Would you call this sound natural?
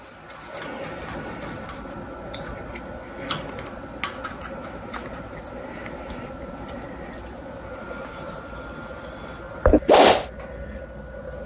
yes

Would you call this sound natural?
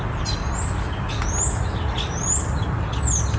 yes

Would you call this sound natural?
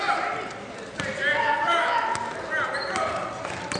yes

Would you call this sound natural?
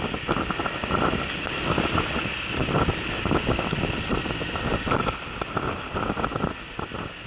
yes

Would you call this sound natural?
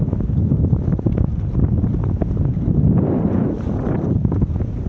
yes